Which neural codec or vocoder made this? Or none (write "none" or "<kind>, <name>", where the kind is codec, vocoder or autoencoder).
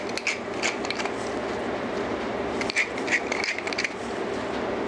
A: none